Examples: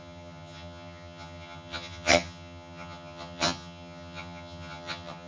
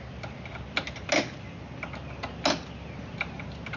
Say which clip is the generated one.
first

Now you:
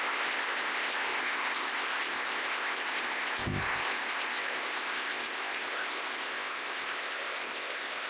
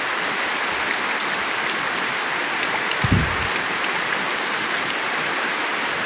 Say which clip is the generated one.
first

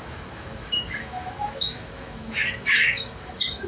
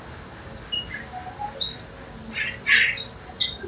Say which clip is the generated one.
first